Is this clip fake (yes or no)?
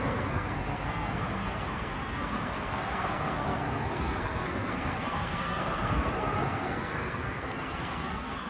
yes